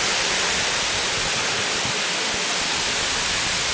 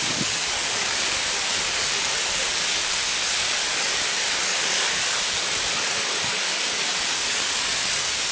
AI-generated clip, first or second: second